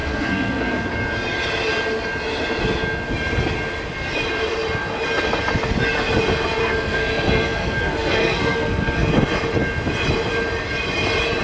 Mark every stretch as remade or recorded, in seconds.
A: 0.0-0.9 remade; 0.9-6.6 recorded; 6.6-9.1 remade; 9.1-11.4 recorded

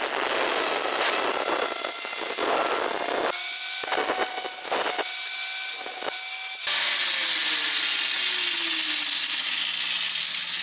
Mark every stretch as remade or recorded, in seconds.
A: 0.0-10.6 recorded